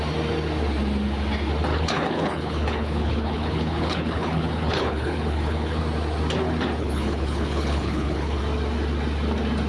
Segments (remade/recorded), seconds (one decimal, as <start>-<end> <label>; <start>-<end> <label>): 0.0-1.7 recorded; 1.7-5.8 remade; 5.8-6.8 recorded; 6.8-8.4 remade; 8.4-9.7 recorded